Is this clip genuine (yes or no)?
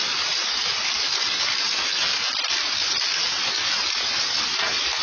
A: yes